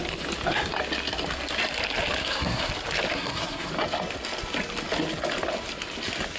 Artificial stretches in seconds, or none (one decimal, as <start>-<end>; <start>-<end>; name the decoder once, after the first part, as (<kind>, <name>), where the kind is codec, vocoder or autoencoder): 2.2-2.7 (codec, SNAC); 3.1-3.7